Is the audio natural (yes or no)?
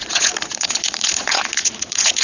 no